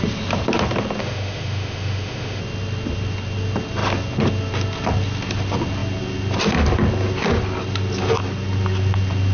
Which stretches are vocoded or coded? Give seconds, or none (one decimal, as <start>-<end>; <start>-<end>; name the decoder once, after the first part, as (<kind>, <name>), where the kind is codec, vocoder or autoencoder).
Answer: 1.0-2.4 (autoencoder, DAC-VAE)